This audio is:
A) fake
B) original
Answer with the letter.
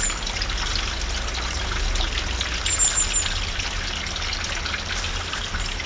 B